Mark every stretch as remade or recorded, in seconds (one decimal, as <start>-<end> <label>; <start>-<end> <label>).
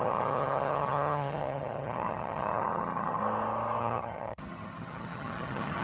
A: 0.0-3.2 remade; 3.2-3.8 recorded; 3.8-5.8 remade